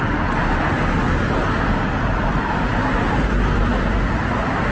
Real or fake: real